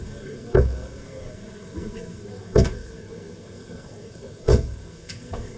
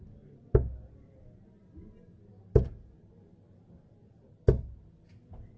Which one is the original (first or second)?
second